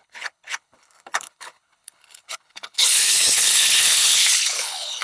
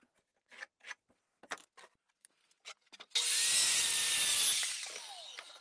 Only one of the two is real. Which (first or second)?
second